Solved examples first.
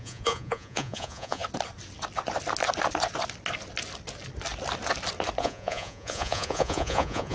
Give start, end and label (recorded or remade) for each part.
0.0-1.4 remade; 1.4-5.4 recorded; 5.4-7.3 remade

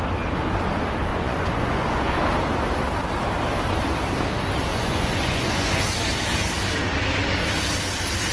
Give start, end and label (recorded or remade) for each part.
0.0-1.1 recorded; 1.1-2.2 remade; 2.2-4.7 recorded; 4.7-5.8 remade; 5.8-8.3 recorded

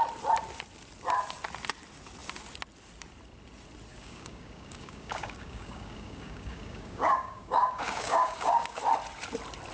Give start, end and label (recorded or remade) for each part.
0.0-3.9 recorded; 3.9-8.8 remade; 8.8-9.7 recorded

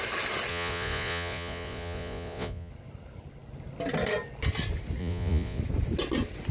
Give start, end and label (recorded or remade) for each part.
0.0-0.5 recorded; 0.5-2.7 remade; 2.7-5.0 recorded; 5.0-5.6 remade; 5.6-6.5 recorded

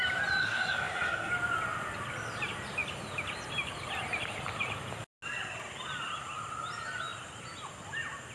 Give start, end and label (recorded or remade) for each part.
0.0-0.4 recorded; 0.4-1.3 remade; 1.3-8.3 recorded

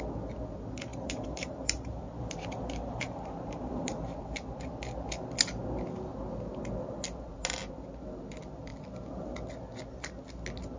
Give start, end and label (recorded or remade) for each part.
0.0-0.9 recorded; 0.9-4.6 remade; 4.6-10.8 recorded

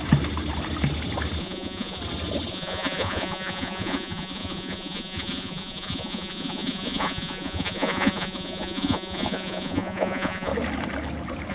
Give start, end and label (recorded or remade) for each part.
0.0-1.4 recorded; 1.4-2.0 remade; 2.0-2.5 recorded; 2.5-10.5 remade; 10.5-11.5 recorded

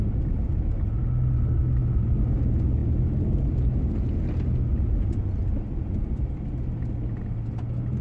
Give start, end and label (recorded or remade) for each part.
0.0-8.0 recorded